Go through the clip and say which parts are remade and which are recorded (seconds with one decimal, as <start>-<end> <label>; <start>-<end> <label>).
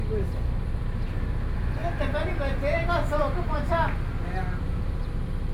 0.0-5.5 recorded